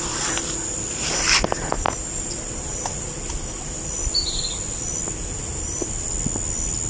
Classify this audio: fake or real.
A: real